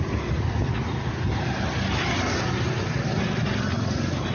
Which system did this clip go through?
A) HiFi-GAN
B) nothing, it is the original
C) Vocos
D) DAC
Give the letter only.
B